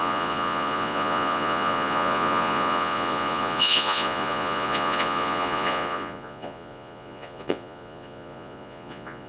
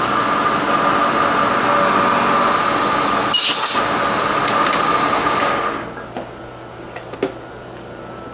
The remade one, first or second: first